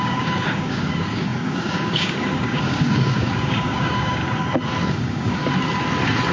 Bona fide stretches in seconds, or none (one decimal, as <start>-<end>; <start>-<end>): 4.2-4.9; 5.4-6.3